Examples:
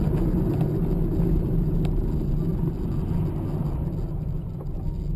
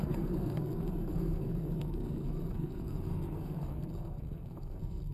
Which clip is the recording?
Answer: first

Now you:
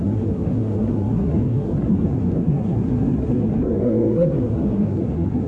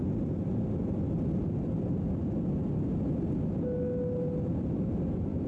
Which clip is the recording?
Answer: second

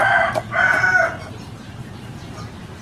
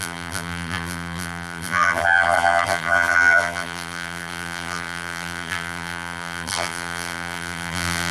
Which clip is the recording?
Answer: first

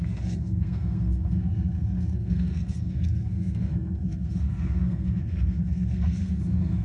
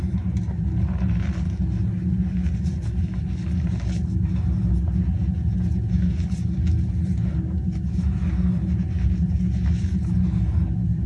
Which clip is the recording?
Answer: second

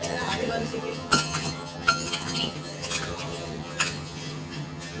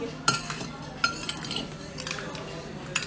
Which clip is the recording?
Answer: second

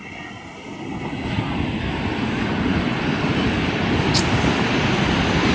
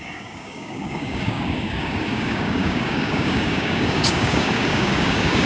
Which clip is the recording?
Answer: first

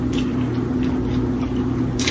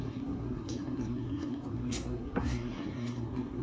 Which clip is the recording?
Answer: first